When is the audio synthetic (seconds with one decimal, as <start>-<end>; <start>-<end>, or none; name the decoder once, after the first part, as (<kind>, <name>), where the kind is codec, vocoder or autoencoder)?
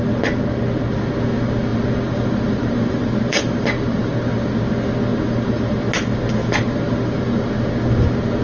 1.7-4.6 (vocoder, BigVGAN v2); 5.1-5.7; 6.4-7.5